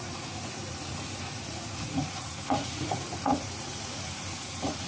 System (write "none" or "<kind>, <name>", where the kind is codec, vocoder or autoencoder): vocoder, Vocos